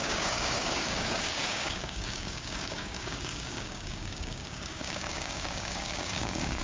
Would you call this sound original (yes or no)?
no